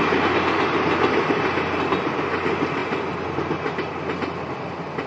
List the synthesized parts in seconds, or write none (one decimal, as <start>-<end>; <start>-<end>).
none